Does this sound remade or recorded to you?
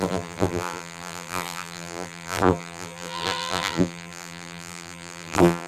remade